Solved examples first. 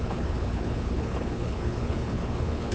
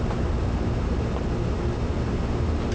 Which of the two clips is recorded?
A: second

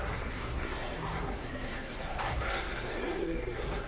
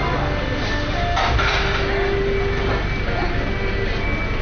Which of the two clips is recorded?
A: second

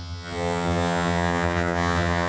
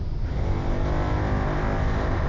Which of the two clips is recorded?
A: second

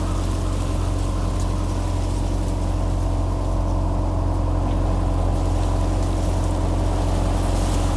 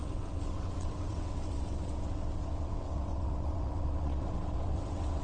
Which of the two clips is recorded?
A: first